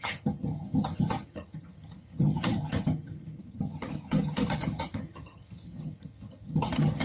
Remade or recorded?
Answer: remade